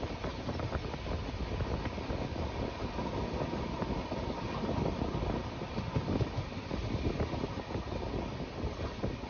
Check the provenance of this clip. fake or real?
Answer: real